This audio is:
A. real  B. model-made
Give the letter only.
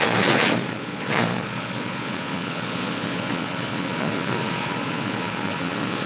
B